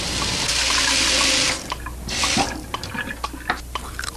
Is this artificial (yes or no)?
no